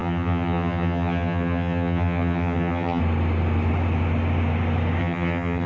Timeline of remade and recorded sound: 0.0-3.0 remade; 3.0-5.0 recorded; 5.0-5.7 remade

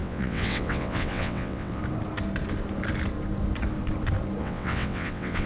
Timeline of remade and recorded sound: 0.0-1.8 remade; 1.8-4.4 recorded; 4.4-5.5 remade

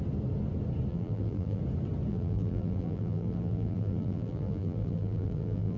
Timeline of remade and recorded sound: 0.0-0.9 recorded; 0.9-1.6 remade; 1.6-2.1 recorded; 2.1-5.8 remade

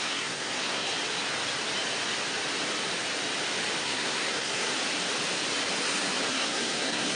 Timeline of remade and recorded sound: 0.0-0.9 remade; 0.9-3.8 recorded; 3.8-4.7 remade; 4.7-6.3 recorded; 6.3-7.2 remade

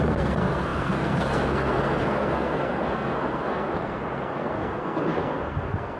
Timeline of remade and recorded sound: 0.0-6.0 remade